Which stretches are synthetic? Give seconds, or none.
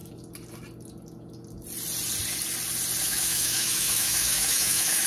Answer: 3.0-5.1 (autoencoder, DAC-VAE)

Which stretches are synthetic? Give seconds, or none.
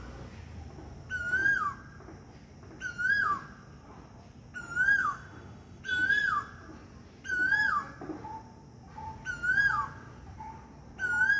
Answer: 5.0-5.8 (autoencoder, DAC-VAE)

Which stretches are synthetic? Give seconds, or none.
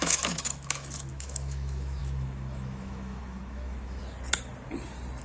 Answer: 0.0-4.0 (autoencoder, DAC-VAE)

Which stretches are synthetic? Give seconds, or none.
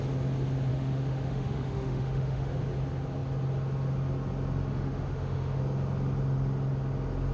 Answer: 0.7-2.5 (autoencoder, DAC-VAE); 4.7-5.6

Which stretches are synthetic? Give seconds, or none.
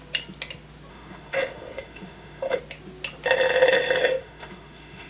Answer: 0.9-2.6 (autoencoder, DAC-VAE); 4.2-5.1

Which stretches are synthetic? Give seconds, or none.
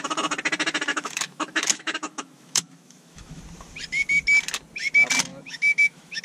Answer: 0.9-3.4 (autoencoder, DAC-VAE); 5.3-6.2